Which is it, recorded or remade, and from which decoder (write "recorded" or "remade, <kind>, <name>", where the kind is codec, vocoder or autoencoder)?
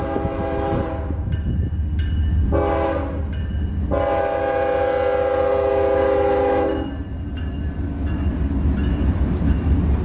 recorded